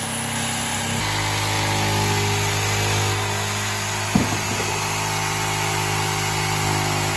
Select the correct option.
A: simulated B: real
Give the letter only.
B